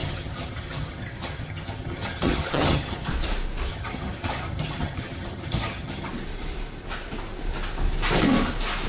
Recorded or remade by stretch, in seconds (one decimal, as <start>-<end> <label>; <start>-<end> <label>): 0.0-3.1 remade; 3.1-3.7 recorded; 3.7-6.1 remade; 6.1-8.9 recorded